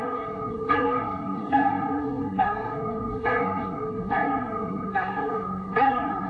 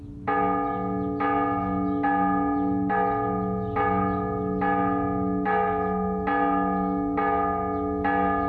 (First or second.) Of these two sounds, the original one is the second